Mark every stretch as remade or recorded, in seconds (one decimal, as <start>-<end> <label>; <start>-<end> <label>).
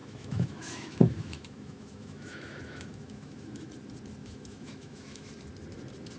0.0-3.7 remade; 3.7-4.2 recorded; 4.2-5.3 remade; 5.3-6.2 recorded